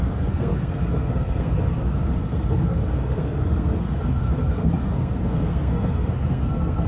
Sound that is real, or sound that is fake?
fake